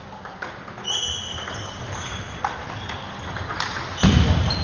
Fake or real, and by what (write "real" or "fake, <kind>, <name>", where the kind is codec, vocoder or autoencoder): real